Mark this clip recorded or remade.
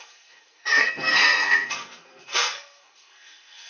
remade